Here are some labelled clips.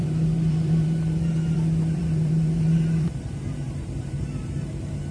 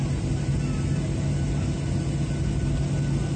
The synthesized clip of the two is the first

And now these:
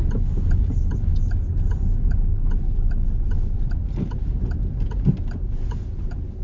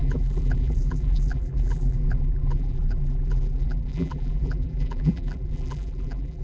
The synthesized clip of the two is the second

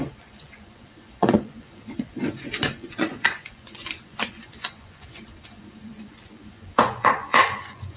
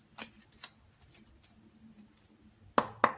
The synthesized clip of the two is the first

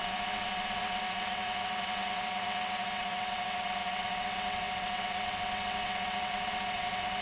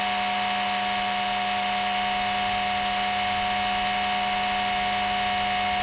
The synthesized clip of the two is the first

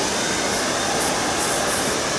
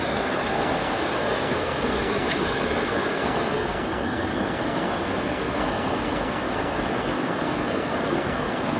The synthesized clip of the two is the second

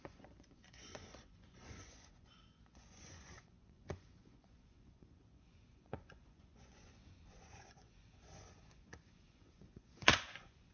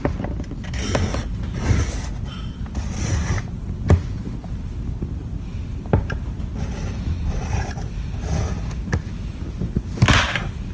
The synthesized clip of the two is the first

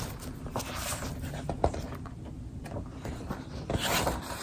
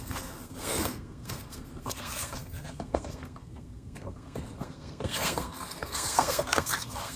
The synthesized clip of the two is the second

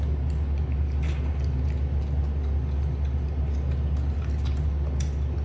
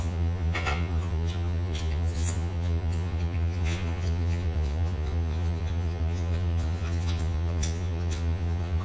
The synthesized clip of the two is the second